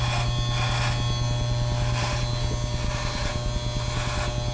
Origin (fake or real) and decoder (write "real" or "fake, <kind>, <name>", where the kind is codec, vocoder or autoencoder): real